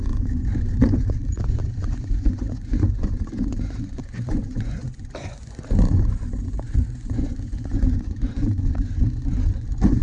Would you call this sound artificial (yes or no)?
yes